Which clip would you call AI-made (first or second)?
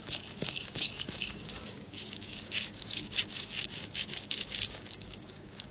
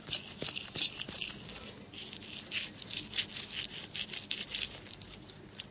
first